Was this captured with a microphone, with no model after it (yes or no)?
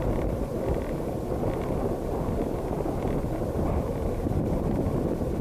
yes